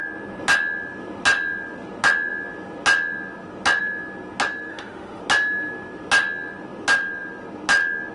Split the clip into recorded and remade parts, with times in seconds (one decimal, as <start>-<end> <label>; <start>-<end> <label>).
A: 0.0-4.7 recorded; 4.7-5.2 remade; 5.2-8.1 recorded